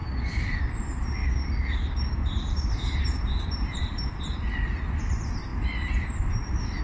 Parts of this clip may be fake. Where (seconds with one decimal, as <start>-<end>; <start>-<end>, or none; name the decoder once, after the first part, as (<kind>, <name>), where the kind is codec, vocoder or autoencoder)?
0.0-0.6 (vocoder, BigVGAN v2); 1.2-1.8; 2.2-4.2